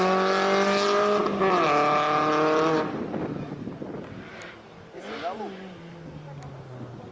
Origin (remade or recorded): recorded